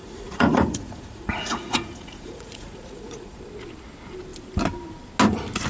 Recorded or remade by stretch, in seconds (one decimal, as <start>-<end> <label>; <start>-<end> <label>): 0.0-3.4 remade; 3.4-5.7 recorded